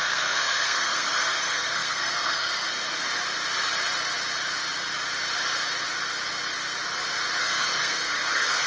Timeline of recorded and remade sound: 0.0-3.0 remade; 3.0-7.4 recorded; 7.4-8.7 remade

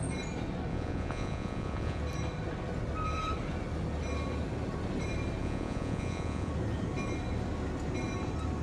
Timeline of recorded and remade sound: 0.0-0.7 recorded; 0.7-2.0 remade; 2.0-5.4 recorded; 5.4-6.5 remade; 6.5-8.6 recorded

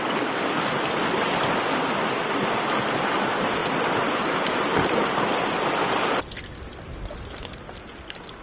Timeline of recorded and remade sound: 0.0-3.6 recorded; 3.6-4.9 remade; 4.9-8.4 recorded

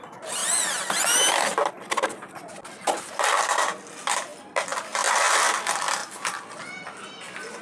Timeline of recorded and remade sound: 0.0-7.6 recorded

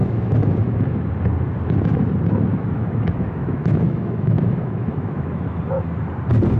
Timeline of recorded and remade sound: 0.0-1.1 remade; 1.1-2.5 recorded; 2.5-5.6 remade; 5.6-6.6 recorded

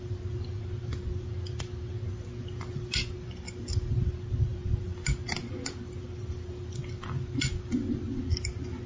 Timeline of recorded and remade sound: 0.0-8.9 recorded

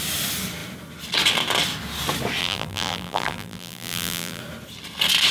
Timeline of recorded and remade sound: 0.0-2.4 recorded; 2.4-4.4 remade; 4.4-5.3 recorded

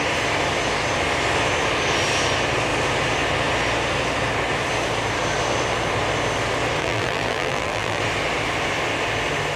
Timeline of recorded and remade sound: 0.0-6.8 recorded; 6.8-8.0 remade; 8.0-9.6 recorded